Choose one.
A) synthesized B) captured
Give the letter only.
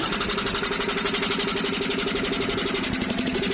B